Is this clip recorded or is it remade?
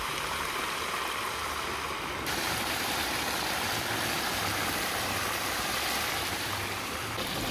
remade